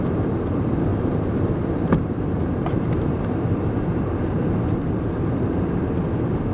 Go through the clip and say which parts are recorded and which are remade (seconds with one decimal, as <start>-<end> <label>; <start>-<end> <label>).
0.0-0.9 recorded; 0.9-4.5 remade; 4.5-6.5 recorded